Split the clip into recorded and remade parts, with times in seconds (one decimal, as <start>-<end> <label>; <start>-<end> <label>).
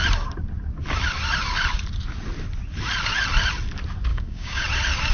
0.0-4.1 recorded; 4.1-4.6 remade; 4.6-5.1 recorded